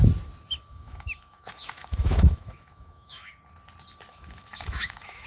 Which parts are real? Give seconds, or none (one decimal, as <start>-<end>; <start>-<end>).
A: 0.0-0.7; 3.3-4.1

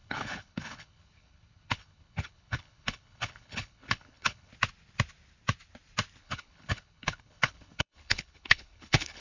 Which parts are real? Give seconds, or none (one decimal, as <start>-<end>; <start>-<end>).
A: 4.5-6.2

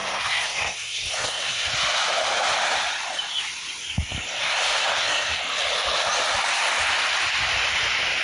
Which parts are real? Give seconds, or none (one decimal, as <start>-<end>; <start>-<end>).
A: 1.7-4.4; 5.4-8.2

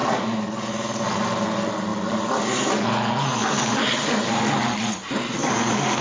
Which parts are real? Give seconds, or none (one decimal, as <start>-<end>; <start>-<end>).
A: 0.0-6.0

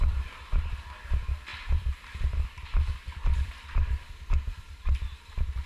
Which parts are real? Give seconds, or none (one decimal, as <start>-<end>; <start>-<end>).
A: 0.0-1.5; 4.9-5.7

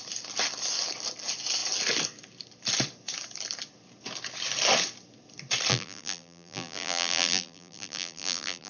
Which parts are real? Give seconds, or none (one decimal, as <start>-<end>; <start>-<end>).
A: 0.0-5.7

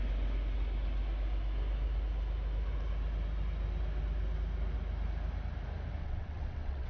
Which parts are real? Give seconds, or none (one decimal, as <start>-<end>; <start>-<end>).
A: 0.0-6.0